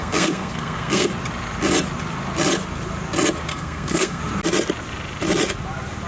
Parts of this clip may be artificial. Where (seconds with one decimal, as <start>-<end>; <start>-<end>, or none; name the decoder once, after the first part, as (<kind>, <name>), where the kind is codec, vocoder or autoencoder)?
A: 0.0-1.1 (codec, SNAC); 3.5-4.2